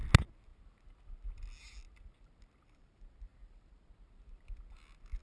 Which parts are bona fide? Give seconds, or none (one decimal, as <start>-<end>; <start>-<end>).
0.0-5.2